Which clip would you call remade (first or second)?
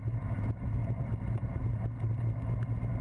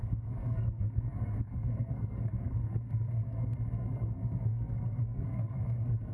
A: second